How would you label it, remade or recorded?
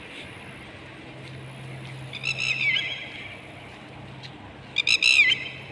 recorded